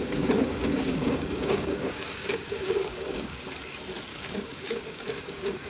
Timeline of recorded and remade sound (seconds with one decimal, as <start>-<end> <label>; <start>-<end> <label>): 0.0-3.4 remade; 3.4-4.1 recorded; 4.1-5.7 remade